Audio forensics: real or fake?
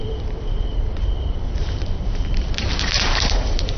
fake